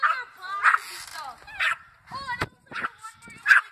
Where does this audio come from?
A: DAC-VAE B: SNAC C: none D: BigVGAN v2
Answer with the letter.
C